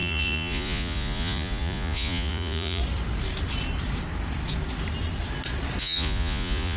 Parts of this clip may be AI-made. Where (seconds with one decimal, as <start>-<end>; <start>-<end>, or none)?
0.0-2.8; 5.8-6.8